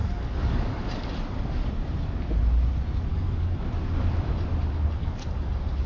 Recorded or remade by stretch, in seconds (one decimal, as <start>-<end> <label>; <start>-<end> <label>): 0.0-0.8 remade; 0.8-3.1 recorded; 3.1-3.6 remade; 3.6-5.0 recorded; 5.0-5.5 remade; 5.5-5.9 recorded